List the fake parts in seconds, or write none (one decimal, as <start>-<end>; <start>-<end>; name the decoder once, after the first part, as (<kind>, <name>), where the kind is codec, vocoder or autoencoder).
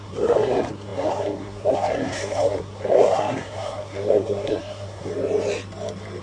0.0-5.1 (codec, SNAC)